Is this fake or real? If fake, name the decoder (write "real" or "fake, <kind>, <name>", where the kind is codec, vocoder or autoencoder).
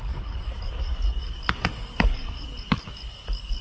fake, codec, DAC